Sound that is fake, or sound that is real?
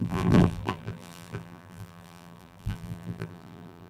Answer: fake